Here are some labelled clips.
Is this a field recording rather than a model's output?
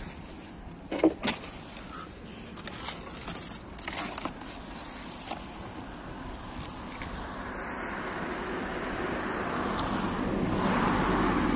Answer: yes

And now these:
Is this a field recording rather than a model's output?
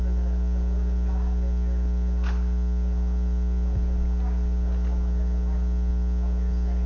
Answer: yes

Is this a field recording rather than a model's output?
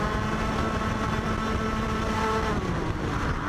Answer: yes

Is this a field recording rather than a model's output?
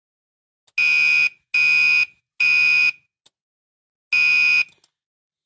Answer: yes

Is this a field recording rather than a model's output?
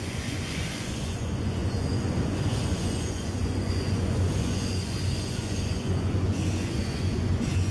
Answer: no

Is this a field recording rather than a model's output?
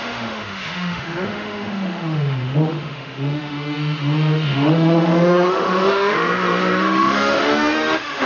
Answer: no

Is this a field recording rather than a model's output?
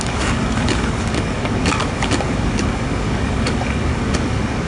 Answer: no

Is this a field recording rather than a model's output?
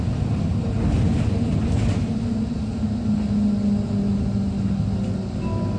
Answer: yes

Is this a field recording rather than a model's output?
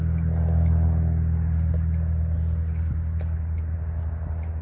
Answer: yes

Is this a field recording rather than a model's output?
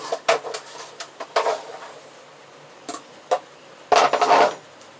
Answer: yes